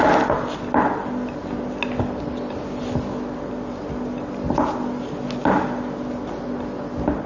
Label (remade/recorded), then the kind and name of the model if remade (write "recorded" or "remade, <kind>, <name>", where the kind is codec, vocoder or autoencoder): recorded